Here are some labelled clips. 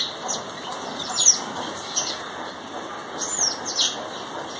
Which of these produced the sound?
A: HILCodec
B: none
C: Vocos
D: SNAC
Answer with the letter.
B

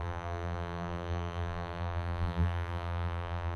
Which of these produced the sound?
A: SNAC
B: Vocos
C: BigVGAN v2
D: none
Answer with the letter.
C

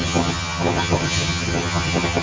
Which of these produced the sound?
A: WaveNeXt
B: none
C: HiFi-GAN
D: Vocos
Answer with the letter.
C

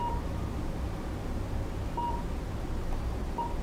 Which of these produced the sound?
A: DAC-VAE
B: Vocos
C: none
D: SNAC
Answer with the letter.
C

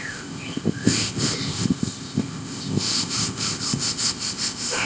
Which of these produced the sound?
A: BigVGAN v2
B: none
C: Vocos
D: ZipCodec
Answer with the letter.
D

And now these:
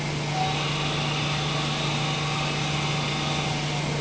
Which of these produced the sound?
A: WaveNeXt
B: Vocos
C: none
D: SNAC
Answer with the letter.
C